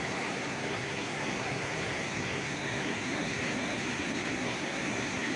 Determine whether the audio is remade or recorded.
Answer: remade